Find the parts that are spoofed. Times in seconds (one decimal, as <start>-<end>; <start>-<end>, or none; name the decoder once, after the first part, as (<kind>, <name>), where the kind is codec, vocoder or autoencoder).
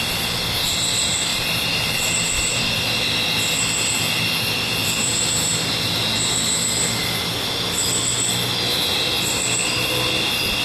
1.3-2.1 (vocoder, BigVGAN v2)